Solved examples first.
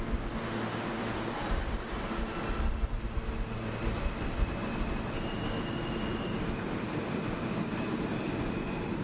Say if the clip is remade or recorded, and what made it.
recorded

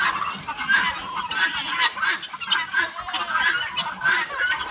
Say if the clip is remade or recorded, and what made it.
recorded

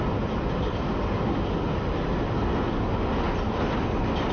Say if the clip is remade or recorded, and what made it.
recorded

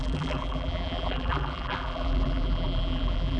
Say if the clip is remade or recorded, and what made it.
remade, vocoder, BigVGAN v2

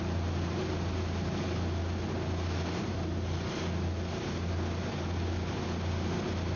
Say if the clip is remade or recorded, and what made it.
recorded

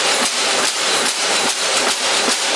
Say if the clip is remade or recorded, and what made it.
remade, vocoder, BigVGAN v2